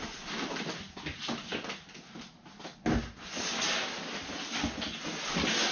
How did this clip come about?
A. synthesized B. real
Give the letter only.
B